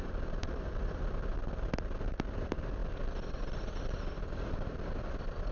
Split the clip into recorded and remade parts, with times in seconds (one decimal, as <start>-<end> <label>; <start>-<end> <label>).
0.0-1.3 remade; 1.3-2.3 recorded; 2.3-5.5 remade